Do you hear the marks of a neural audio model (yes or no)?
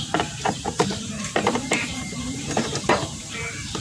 yes